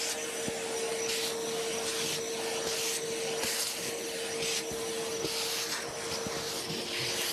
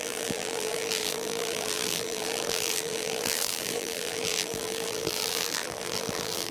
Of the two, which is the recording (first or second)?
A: first